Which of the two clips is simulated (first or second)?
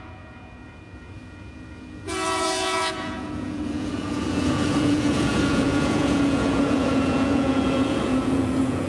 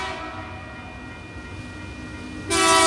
first